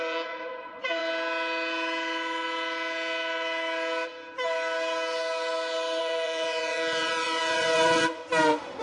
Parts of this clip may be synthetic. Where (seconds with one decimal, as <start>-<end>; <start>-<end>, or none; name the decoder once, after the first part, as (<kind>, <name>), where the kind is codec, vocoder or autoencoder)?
0.0-1.0 (vocoder, Vocos); 6.0-8.2